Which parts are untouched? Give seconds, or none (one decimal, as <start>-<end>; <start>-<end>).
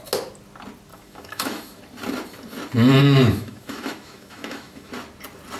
0.0-0.9; 1.8-3.0; 4.9-5.6